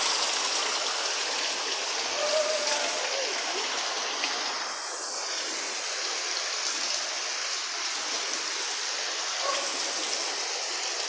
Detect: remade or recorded recorded